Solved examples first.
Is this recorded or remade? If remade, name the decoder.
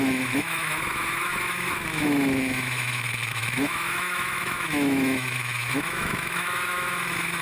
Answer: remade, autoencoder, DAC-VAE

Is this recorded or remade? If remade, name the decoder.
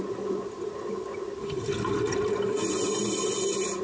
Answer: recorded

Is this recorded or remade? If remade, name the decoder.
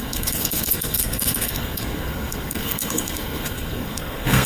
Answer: remade, codec, SNAC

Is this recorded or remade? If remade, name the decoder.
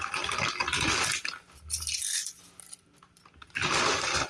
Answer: recorded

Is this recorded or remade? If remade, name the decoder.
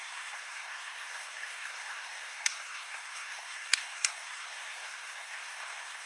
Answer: remade, codec, SNAC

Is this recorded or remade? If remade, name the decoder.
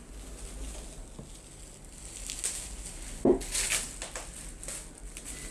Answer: recorded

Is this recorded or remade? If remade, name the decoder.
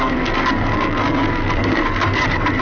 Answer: remade, codec, SNAC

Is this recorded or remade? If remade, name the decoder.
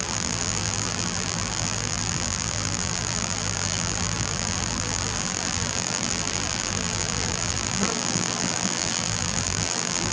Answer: remade, vocoder, BigVGAN v2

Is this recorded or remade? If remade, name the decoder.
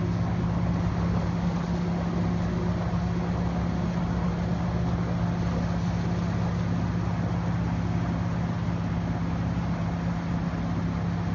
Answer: recorded